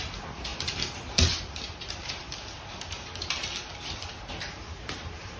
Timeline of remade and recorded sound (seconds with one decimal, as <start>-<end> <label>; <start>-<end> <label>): 0.0-0.5 recorded; 0.5-2.6 remade; 2.6-3.6 recorded; 3.6-4.2 remade; 4.2-5.4 recorded